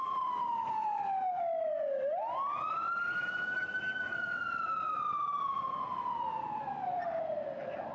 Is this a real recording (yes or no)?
yes